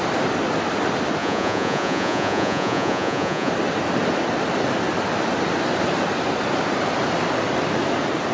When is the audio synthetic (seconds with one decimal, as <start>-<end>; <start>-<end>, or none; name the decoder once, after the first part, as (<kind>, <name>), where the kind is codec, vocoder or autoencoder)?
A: 1.2-3.5 (vocoder, Vocos)